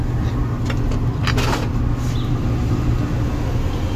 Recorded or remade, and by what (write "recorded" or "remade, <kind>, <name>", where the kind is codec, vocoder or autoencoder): recorded